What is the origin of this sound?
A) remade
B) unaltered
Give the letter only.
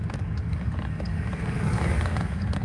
A